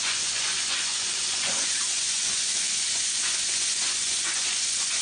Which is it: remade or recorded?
remade